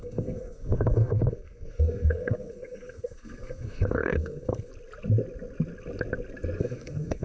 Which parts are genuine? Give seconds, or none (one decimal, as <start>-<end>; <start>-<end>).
4.7-6.6